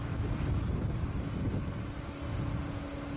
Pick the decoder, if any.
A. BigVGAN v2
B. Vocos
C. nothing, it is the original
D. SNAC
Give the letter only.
C